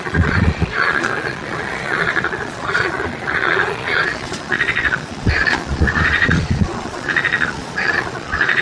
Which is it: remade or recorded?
remade